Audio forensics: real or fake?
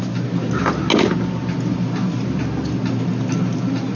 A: real